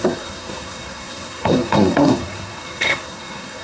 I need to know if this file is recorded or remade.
remade